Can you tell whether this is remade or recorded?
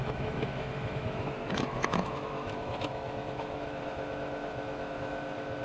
remade